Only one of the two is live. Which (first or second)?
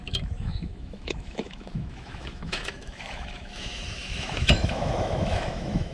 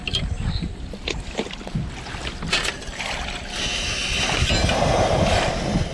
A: second